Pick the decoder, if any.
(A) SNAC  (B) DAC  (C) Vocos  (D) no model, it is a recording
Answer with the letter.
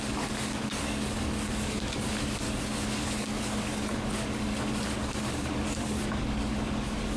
B